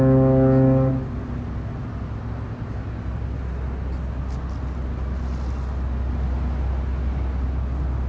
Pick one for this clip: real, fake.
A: real